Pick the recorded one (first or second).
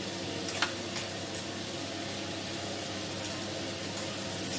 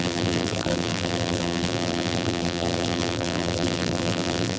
first